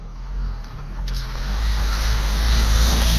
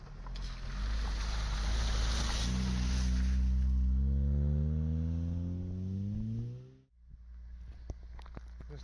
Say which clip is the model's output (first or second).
first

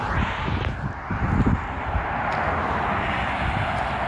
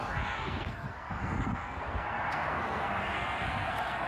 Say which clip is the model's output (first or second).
second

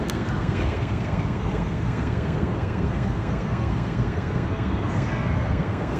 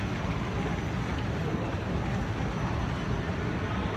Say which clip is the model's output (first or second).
first